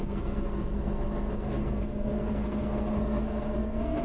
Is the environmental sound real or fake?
fake